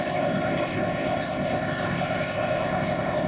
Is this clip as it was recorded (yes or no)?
no